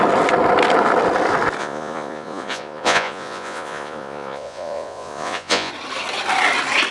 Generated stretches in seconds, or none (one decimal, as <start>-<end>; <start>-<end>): 1.6-5.7